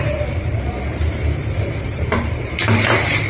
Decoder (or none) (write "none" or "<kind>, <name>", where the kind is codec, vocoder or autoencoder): vocoder, BigVGAN v2